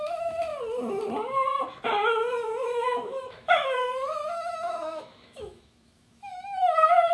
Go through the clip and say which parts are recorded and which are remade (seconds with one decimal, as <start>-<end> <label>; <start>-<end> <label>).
0.0-0.5 remade; 0.5-2.6 recorded; 2.6-7.1 remade

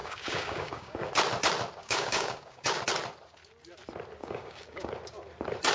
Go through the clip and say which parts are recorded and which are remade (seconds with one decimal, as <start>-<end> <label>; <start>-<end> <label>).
0.0-1.1 remade; 1.1-1.8 recorded; 1.8-2.8 remade; 2.8-4.2 recorded; 4.2-4.9 remade; 4.9-5.7 recorded